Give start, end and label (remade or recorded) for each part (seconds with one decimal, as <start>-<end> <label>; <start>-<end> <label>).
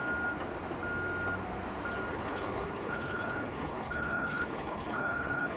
0.0-2.1 recorded; 2.1-5.6 remade